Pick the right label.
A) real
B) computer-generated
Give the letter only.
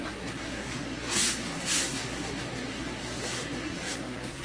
B